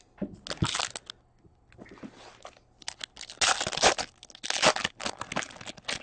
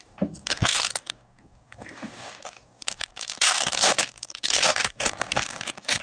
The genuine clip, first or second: first